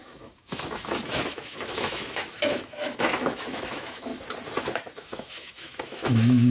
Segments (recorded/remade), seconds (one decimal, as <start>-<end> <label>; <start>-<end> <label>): 0.0-4.1 remade; 4.1-4.6 recorded; 4.6-6.5 remade